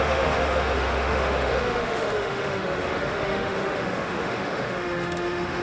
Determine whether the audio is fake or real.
fake